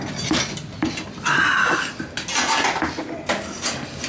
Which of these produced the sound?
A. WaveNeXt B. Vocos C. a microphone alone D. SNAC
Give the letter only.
C